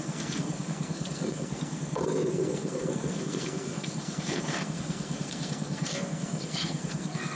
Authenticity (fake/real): fake